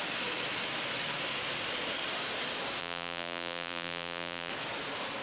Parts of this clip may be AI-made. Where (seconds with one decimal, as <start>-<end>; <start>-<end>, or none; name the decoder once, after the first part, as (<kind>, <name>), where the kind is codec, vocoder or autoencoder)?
2.8-4.5 (vocoder, BigVGAN v2)